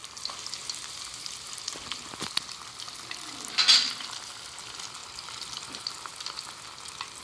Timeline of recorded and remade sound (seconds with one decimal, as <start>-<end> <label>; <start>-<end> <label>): 0.0-7.2 recorded